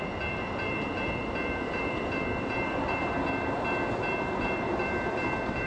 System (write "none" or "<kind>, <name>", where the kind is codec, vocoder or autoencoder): vocoder, BigVGAN v2